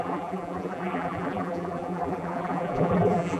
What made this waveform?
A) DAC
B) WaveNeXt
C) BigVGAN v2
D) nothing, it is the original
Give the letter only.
C